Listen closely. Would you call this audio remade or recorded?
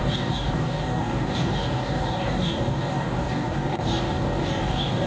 remade